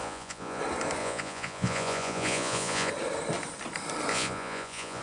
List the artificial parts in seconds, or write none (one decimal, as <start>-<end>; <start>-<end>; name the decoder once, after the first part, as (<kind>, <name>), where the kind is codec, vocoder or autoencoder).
0.0-0.6 (vocoder, Vocos); 1.0-2.9; 4.1-5.0